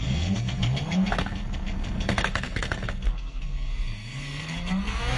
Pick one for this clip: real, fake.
fake